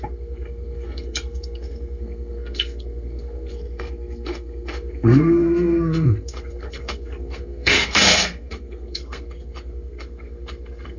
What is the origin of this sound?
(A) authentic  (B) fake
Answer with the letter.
B